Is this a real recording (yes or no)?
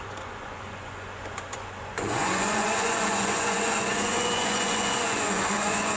no